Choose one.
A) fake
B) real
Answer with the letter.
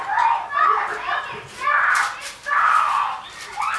B